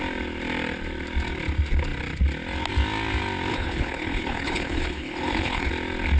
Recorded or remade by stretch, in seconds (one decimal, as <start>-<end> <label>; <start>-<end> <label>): 0.0-3.5 recorded; 3.5-5.7 remade; 5.7-6.2 recorded